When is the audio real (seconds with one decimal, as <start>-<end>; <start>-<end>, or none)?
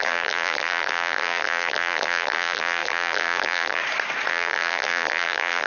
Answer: 3.8-4.3